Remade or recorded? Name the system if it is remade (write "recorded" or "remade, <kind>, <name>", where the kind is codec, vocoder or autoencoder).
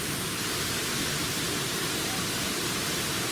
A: remade, vocoder, BigVGAN v2